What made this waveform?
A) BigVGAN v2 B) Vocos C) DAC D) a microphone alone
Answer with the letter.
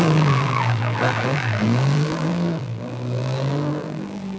A